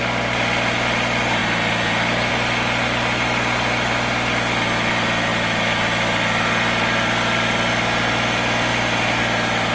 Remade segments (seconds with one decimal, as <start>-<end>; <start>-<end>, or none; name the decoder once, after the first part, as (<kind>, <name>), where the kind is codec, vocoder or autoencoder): none